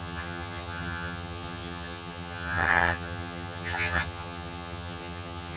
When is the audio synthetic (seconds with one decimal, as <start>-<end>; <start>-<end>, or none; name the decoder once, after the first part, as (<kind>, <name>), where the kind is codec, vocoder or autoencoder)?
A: 0.0-5.6 (vocoder, HiFi-GAN)